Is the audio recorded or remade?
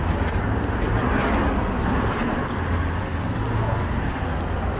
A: recorded